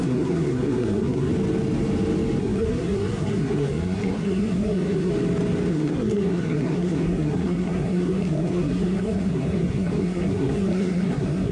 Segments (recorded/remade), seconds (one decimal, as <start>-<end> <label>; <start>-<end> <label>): 0.0-1.3 remade; 1.3-2.4 recorded; 2.4-5.1 remade; 5.1-5.7 recorded; 5.7-11.5 remade

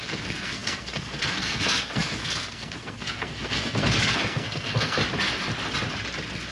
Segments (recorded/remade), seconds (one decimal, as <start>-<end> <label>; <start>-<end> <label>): 0.0-5.0 remade; 5.0-6.5 recorded